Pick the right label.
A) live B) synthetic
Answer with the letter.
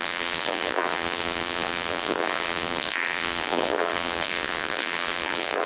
B